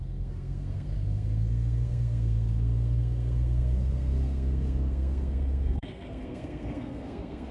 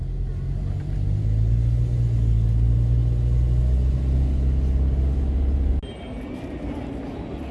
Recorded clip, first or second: second